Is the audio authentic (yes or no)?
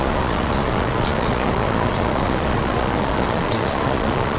no